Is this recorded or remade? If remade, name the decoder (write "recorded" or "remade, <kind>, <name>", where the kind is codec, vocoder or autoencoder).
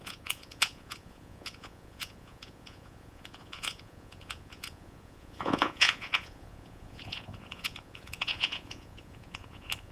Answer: remade, vocoder, Vocos